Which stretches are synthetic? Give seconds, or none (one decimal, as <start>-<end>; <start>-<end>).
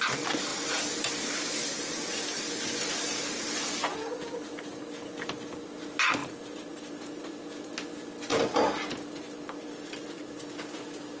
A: 6.2-6.9